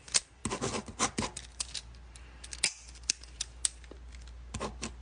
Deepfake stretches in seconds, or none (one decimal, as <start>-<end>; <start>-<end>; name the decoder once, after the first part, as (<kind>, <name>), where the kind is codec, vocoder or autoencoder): none